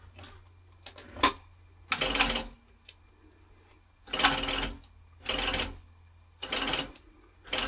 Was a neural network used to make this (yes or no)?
no